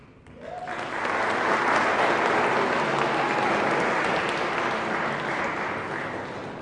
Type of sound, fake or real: real